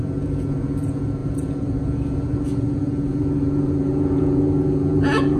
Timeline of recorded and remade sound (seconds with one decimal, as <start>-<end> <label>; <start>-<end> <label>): 0.0-5.4 remade